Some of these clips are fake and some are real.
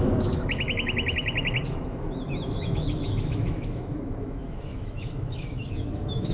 fake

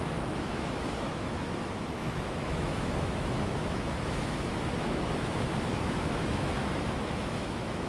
fake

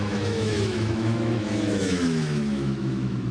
fake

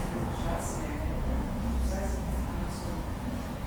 fake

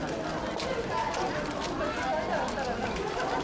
real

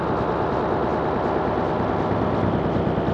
real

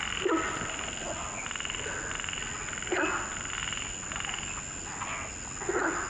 real